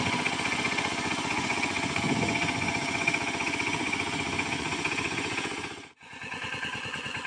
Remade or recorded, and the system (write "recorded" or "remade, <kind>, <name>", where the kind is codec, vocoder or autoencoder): remade, vocoder, Vocos